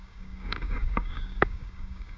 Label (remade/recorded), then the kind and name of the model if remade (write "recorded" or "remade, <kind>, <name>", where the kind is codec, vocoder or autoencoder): remade, codec, DAC